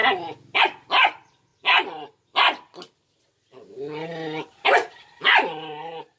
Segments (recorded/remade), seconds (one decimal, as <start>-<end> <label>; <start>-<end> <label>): 0.0-6.2 recorded

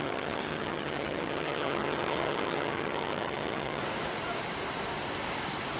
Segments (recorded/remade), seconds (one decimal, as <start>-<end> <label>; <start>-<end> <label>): 0.0-3.8 remade; 3.8-5.8 recorded

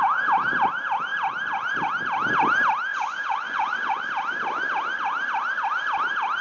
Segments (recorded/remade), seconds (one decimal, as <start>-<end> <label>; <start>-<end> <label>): 0.0-2.9 recorded; 2.9-4.0 remade; 4.0-6.4 recorded

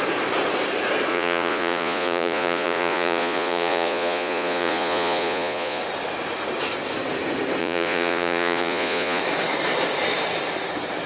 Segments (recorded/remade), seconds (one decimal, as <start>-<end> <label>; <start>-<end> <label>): 0.0-1.1 recorded; 1.1-5.8 remade; 5.8-7.6 recorded; 7.6-9.2 remade; 9.2-11.1 recorded